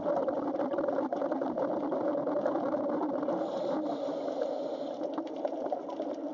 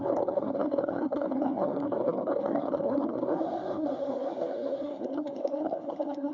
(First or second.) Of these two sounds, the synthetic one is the second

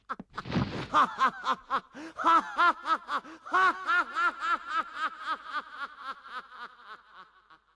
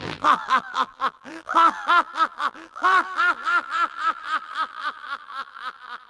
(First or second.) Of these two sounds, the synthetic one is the second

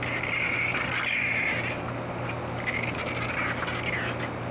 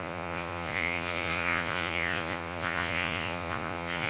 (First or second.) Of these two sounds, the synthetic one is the second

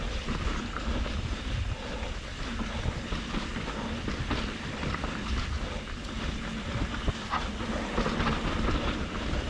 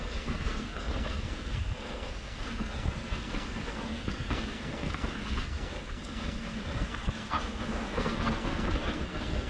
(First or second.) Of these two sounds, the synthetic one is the second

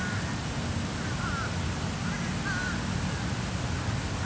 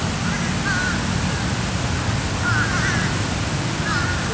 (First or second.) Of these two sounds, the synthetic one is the first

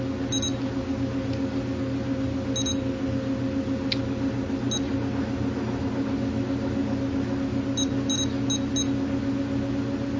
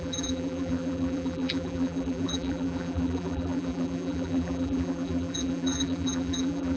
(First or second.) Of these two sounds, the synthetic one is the second